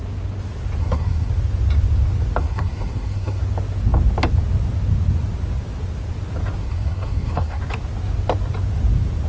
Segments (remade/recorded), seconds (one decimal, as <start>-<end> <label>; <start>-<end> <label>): 0.0-0.8 recorded; 0.8-1.3 remade; 1.3-2.4 recorded; 2.4-3.4 remade; 3.4-6.6 recorded; 6.6-7.6 remade; 7.6-9.3 recorded